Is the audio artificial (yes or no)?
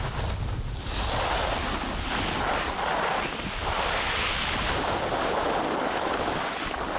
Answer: no